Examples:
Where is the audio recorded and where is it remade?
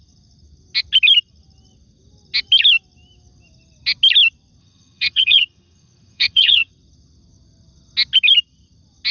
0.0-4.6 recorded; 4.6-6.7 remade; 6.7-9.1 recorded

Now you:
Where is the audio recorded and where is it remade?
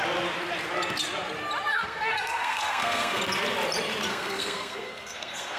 0.0-1.7 recorded; 1.7-3.2 remade; 3.2-4.1 recorded; 4.1-5.6 remade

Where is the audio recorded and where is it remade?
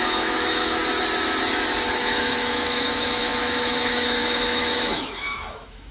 0.0-0.8 remade; 0.8-2.0 recorded; 2.0-5.9 remade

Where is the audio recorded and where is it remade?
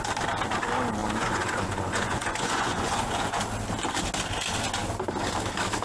0.0-1.0 recorded; 1.0-3.4 remade; 3.4-5.8 recorded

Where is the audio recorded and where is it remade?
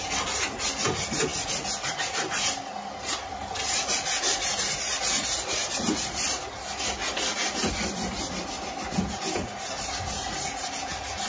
0.0-11.3 recorded